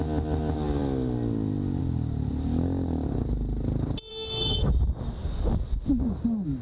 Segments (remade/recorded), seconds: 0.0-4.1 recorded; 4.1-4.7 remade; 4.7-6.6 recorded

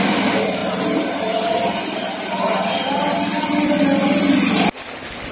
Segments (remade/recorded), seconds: 0.0-5.3 recorded

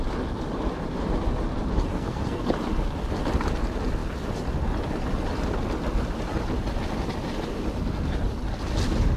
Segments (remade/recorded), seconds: 0.0-1.9 recorded; 1.9-2.4 remade; 2.4-9.2 recorded

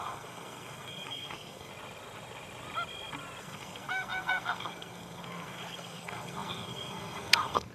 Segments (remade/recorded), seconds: 0.0-1.7 remade; 1.7-3.4 recorded; 3.4-7.7 remade